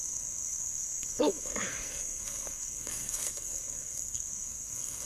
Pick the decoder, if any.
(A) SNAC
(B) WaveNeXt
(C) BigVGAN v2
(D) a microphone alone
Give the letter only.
A